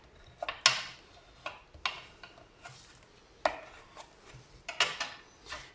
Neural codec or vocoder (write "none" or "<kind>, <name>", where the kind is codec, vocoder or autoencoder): none